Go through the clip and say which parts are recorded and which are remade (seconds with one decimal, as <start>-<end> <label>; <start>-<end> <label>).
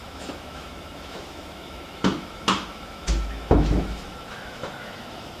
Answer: 0.0-5.4 remade